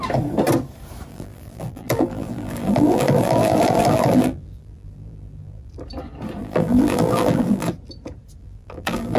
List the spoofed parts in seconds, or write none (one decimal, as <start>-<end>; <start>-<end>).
1.1-5.7; 6.4-7.7; 8.4-9.2